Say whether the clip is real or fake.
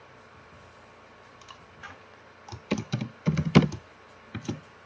fake